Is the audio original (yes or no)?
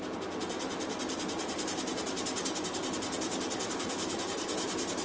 no